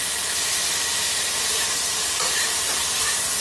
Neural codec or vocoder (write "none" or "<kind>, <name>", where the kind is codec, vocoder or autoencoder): vocoder, BigVGAN v2